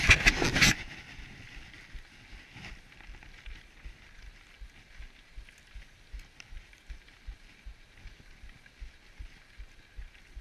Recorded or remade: recorded